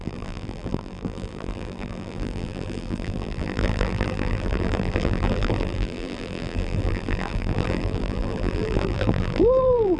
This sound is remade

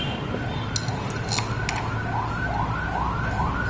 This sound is recorded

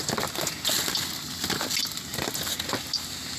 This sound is recorded